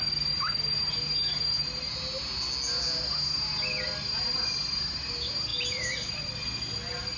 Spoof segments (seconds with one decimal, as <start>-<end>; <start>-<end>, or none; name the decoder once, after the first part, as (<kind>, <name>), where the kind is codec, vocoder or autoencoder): none

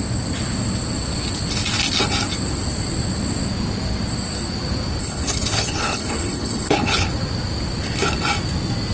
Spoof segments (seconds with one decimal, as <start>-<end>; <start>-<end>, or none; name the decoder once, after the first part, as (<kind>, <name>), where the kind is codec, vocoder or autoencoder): 5.0-7.1 (codec, HILCodec)

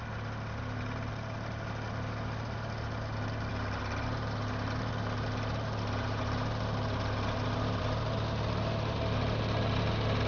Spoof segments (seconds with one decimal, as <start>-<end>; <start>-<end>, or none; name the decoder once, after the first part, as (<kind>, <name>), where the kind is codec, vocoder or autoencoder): none

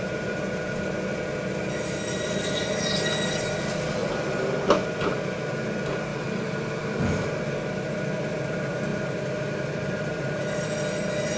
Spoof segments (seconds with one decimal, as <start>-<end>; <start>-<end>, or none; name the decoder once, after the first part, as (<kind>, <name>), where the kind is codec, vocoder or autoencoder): 6.1-7.4 (vocoder, BigVGAN v2); 8.9-10.4

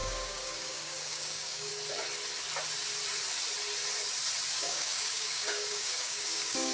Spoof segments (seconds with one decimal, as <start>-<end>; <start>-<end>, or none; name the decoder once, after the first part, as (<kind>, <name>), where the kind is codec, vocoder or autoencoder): 0.0-1.7 (codec, DAC); 4.5-6.7